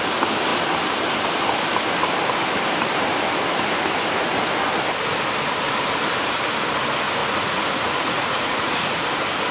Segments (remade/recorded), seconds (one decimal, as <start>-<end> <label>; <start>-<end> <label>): 0.0-7.2 recorded; 7.2-9.0 remade; 9.0-9.5 recorded